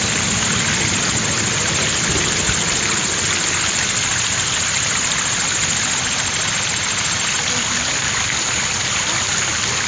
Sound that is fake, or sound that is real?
real